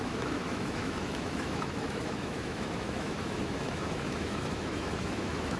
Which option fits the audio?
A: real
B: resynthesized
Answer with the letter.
B